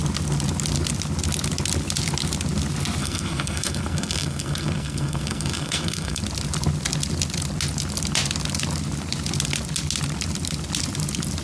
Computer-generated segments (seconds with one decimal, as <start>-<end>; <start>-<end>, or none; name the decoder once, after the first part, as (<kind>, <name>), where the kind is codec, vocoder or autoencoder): 3.0-6.2 (codec, SNAC)